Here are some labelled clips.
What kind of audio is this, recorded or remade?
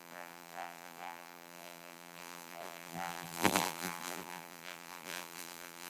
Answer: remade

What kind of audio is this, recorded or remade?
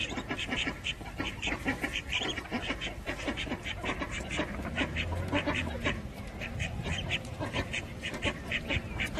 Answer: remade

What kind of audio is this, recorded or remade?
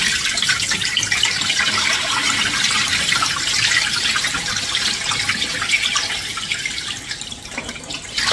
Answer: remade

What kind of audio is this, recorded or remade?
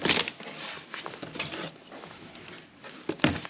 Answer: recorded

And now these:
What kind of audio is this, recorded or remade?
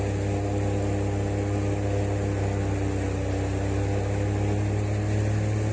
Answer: recorded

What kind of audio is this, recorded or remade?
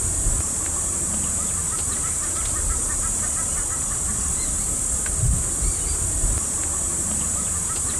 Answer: remade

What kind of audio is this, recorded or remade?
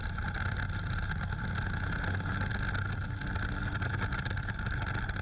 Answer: recorded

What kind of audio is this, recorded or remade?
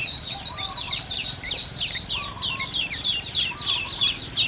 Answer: remade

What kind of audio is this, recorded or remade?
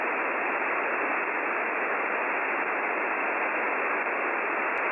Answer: recorded